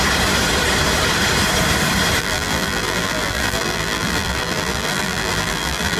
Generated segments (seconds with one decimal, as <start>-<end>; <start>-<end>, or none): 2.2-6.0